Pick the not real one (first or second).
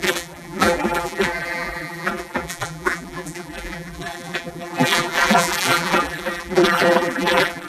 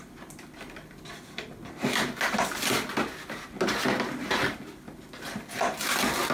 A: first